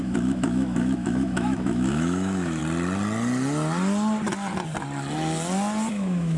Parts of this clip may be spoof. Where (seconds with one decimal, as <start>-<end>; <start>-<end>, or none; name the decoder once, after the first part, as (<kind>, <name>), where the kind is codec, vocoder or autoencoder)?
0.0-2.6 (autoencoder, DAC-VAE); 5.9-6.4

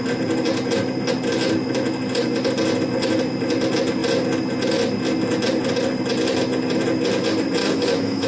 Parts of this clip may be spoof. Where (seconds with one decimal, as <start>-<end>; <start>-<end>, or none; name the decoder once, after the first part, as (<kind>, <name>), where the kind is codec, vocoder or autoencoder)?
7.6-8.3 (autoencoder, DAC-VAE)

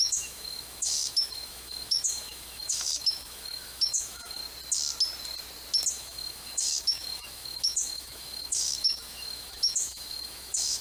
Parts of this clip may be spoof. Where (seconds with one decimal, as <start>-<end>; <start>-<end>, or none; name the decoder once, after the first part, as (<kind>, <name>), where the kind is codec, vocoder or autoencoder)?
0.0-4.4 (autoencoder, DAC-VAE); 5.9-10.8

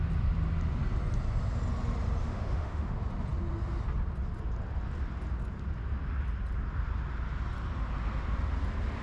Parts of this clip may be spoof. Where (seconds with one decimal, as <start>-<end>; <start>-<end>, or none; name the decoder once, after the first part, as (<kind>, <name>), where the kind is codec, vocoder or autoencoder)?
2.2-2.9 (autoencoder, DAC-VAE)

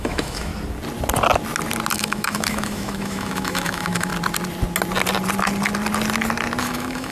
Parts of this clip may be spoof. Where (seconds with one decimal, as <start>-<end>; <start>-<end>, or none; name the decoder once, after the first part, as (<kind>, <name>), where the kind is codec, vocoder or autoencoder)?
0.0-0.5 (autoencoder, DAC-VAE); 1.9-4.1; 6.6-7.1